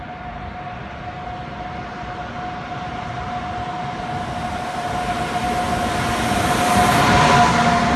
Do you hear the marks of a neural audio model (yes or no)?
no